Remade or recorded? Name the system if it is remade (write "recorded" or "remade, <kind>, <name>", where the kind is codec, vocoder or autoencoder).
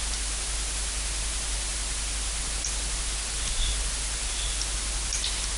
recorded